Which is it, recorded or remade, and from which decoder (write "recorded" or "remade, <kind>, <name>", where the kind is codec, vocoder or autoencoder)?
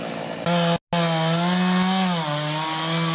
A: recorded